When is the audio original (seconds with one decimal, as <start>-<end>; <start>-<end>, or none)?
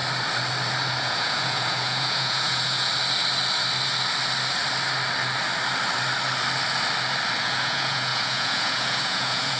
0.0-1.0; 2.9-7.4